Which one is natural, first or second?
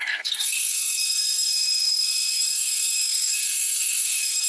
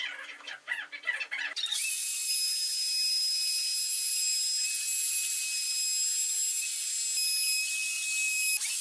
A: second